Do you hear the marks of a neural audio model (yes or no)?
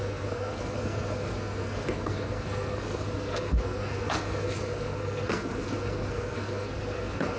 yes